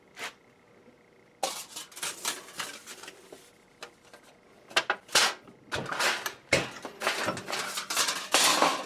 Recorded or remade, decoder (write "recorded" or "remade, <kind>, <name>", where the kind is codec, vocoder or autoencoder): recorded